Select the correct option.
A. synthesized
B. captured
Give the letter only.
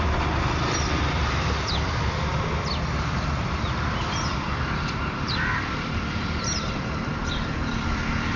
A